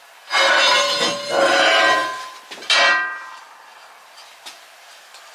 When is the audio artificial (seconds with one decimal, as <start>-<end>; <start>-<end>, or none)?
none